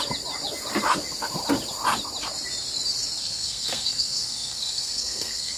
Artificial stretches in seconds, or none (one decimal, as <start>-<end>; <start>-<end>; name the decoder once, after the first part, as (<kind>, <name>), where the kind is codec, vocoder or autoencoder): 3.2-5.6 (codec, SNAC)